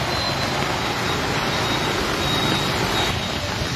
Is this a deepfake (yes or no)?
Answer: no